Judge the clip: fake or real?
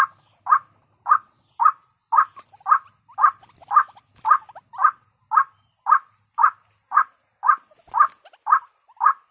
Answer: real